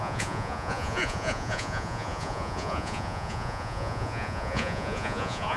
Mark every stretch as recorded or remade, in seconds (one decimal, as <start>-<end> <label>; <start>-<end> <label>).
0.0-5.6 remade